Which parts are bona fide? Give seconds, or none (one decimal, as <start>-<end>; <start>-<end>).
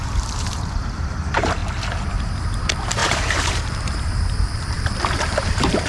1.6-2.1